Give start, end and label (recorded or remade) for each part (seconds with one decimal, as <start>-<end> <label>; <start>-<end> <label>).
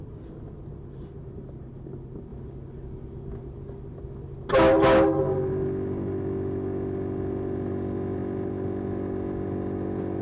0.0-10.2 recorded